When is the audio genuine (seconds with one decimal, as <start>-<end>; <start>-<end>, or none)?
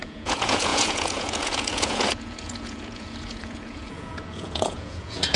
none